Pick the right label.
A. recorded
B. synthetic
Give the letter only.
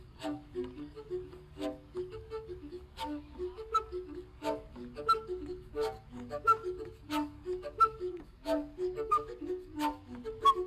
B